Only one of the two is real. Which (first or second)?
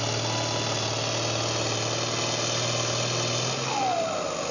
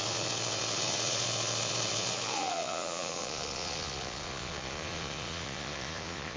first